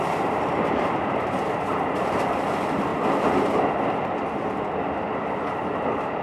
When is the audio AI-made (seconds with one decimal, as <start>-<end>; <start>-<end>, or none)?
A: 0.0-2.9; 4.2-6.2